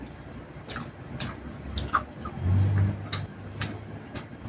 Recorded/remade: recorded